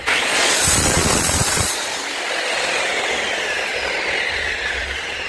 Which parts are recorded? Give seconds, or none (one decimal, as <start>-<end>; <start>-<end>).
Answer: 1.9-3.3; 3.7-4.4